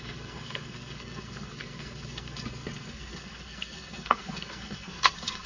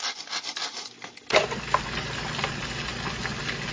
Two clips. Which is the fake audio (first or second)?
first